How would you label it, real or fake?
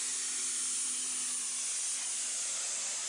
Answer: real